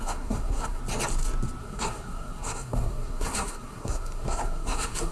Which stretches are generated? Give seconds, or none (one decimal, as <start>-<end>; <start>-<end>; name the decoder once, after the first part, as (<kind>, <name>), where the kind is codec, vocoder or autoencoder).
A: 0.0-0.8 (codec, SNAC); 1.6-5.1